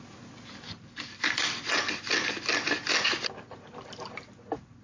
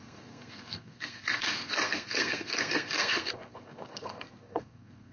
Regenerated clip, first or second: second